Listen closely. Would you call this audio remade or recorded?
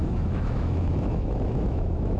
remade